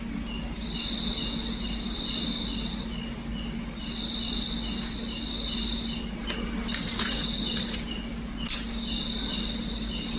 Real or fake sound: real